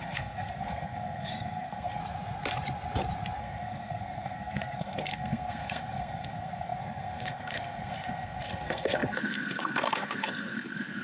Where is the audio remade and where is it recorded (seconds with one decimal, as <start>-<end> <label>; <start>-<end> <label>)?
0.0-2.0 remade; 2.0-3.4 recorded; 3.4-11.0 remade